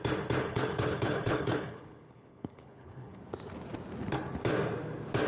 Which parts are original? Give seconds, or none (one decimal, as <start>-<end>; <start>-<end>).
0.0-0.4; 3.2-5.3